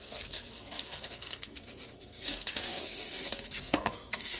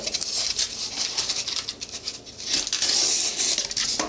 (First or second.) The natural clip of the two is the second